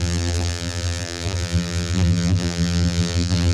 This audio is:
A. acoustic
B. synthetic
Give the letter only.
B